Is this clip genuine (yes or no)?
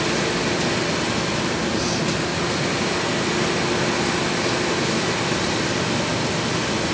yes